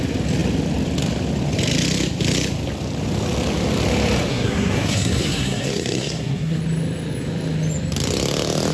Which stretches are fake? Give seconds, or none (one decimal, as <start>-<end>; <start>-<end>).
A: 4.3-6.6